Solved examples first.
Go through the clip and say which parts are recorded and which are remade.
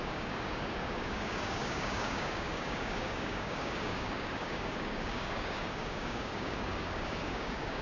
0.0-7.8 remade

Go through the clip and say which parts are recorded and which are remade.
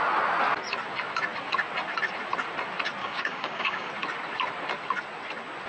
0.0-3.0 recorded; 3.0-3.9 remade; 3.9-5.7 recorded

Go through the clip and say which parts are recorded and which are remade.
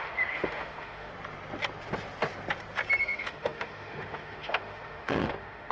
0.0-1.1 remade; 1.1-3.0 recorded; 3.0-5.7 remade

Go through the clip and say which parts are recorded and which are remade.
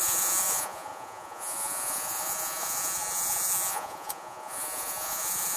0.0-5.6 remade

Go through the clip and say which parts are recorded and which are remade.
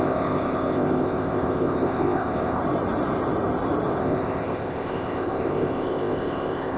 0.0-2.6 remade; 2.6-4.0 recorded; 4.0-6.8 remade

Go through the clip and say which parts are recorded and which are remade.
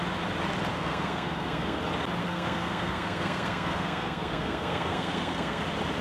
0.0-0.7 recorded; 0.7-1.8 remade; 1.8-2.2 recorded; 2.2-5.6 remade; 5.6-6.0 recorded